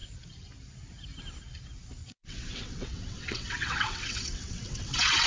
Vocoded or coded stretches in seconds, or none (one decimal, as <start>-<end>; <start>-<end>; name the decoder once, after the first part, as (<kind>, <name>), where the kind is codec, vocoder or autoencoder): 2.0-5.3 (vocoder, WaveNeXt)